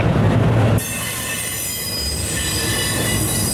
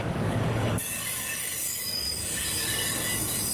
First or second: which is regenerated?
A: second